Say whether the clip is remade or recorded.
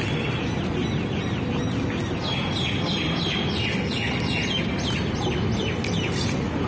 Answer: recorded